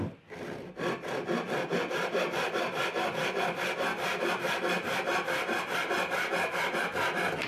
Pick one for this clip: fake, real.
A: real